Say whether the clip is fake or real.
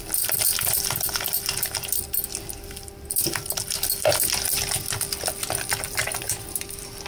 fake